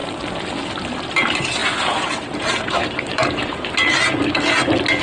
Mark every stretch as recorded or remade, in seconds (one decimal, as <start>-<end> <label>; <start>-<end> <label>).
0.0-1.6 recorded; 1.6-3.7 remade; 3.7-5.0 recorded